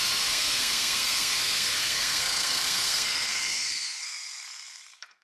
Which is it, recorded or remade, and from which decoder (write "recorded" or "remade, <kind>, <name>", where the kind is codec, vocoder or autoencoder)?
remade, codec, SNAC